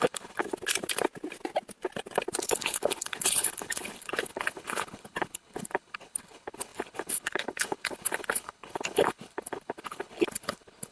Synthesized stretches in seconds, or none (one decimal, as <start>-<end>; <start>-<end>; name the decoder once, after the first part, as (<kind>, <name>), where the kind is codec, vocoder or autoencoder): 0.0-0.4 (codec, HILCodec); 2.4-10.9